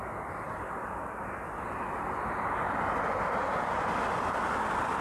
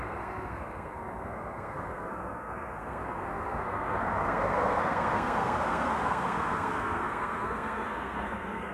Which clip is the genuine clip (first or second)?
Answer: first